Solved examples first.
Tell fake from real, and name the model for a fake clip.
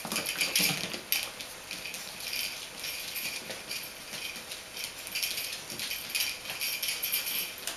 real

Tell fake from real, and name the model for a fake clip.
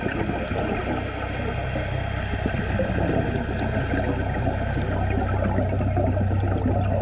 real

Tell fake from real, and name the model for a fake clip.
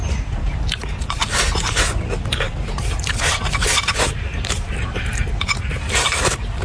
fake, vocoder, BigVGAN v2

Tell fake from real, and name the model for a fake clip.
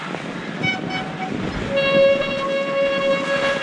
real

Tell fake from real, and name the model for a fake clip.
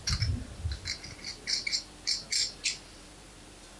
real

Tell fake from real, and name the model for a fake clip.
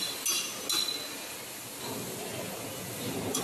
real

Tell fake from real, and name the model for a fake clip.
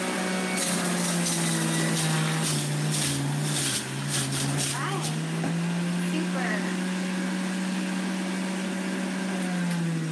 real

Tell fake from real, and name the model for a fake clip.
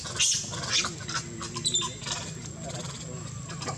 real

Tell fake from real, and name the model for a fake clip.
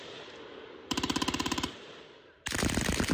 real